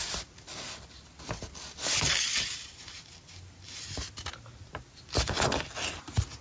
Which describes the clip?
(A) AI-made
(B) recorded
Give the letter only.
B